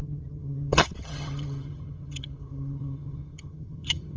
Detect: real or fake fake